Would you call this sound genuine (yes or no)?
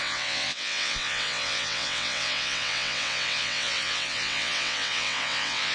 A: no